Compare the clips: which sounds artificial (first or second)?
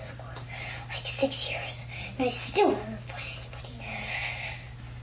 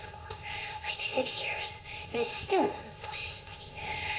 second